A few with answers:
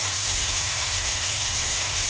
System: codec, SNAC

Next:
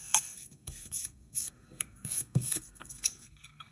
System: codec, SNAC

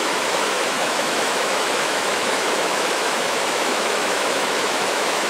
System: autoencoder, DAC-VAE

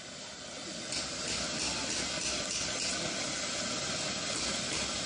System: none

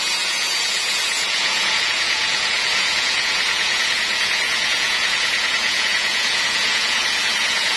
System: vocoder, Vocos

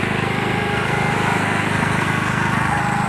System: codec, SNAC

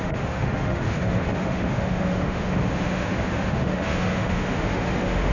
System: autoencoder, DAC-VAE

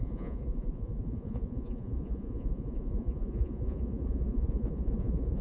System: vocoder, Vocos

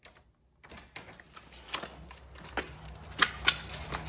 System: none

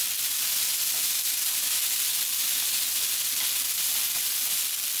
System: none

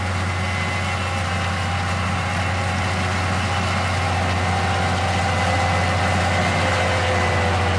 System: none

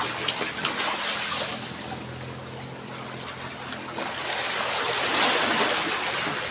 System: none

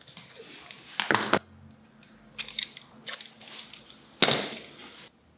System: none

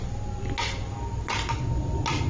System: none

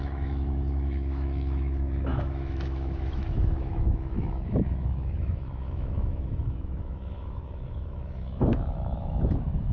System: autoencoder, DAC-VAE